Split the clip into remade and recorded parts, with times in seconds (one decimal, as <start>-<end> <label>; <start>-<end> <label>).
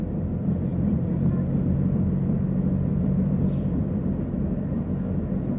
0.0-0.7 recorded; 0.7-1.3 remade; 1.3-2.9 recorded; 2.9-4.8 remade; 4.8-5.6 recorded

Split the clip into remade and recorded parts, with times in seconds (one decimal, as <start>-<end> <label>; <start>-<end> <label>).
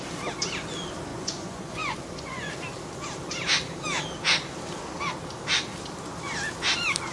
0.0-1.1 recorded; 1.1-2.5 remade; 2.5-7.1 recorded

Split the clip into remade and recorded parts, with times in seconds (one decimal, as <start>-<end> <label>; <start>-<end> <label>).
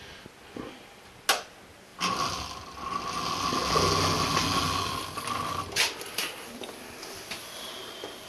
0.0-8.3 recorded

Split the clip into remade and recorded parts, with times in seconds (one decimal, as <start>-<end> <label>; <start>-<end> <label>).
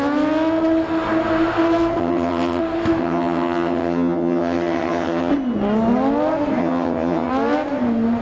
0.0-2.0 recorded; 2.0-2.6 remade; 2.6-3.0 recorded; 3.0-5.3 remade; 5.3-6.6 recorded; 6.6-7.3 remade; 7.3-8.2 recorded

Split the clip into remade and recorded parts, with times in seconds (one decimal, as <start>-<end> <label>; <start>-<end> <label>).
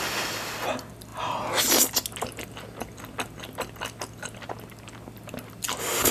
0.0-6.1 recorded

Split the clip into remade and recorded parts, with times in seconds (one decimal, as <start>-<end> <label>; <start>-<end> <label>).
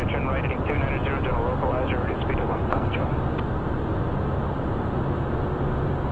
0.0-2.4 recorded; 2.4-3.1 remade; 3.1-6.1 recorded